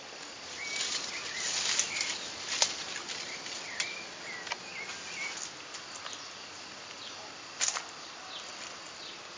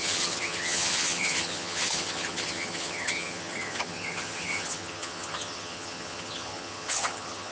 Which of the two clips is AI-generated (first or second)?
second